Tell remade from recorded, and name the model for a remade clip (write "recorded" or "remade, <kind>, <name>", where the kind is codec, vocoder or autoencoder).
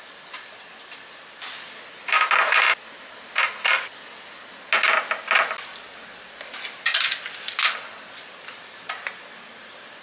recorded